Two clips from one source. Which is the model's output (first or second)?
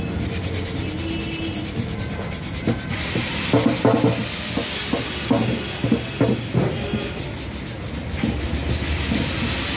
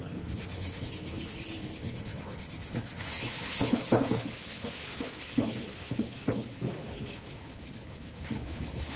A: second